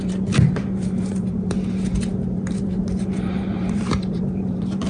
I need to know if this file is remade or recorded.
remade